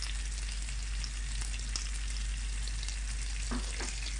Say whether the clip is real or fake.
real